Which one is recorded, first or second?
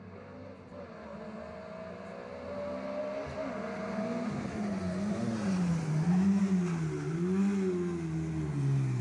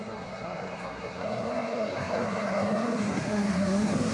first